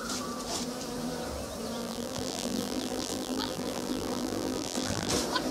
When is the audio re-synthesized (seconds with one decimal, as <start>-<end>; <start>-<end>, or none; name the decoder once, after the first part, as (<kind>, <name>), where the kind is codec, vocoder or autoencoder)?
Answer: 1.8-5.1 (vocoder, BigVGAN v2)